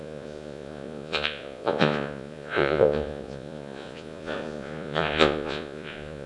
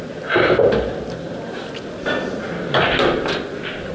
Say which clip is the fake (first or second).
first